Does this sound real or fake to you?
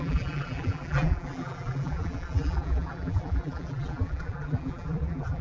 fake